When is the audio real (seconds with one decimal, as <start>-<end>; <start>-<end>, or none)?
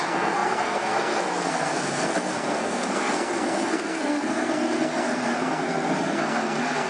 none